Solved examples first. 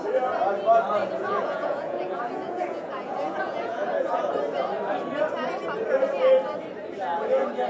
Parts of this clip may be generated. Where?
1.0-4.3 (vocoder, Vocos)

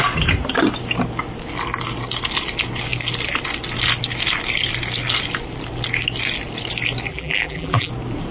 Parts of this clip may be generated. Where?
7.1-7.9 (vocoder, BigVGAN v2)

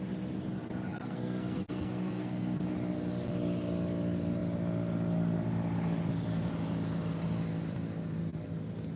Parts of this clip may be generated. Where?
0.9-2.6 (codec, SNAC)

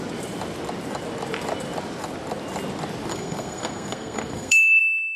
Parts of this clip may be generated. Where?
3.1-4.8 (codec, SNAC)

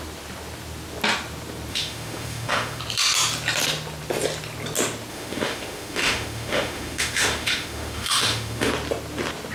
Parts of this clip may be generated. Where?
1.7-2.8 (autoencoder, DAC-VAE); 5.1-8.7